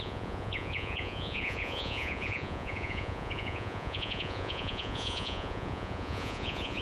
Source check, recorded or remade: remade